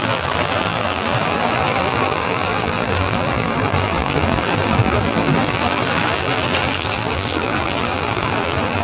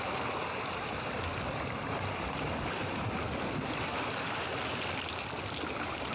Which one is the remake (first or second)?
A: first